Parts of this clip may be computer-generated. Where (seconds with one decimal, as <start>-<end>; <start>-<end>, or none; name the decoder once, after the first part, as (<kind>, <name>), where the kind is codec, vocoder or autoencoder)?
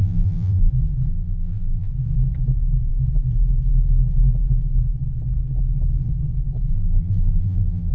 0.0-0.7 (vocoder, BigVGAN v2); 1.1-1.9; 6.7-7.9